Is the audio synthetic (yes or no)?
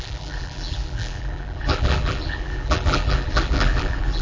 yes